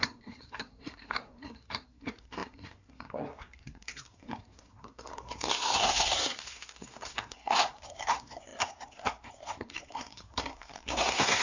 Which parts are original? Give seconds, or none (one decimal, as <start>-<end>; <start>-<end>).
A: none